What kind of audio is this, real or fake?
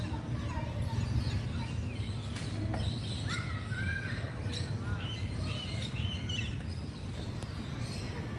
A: real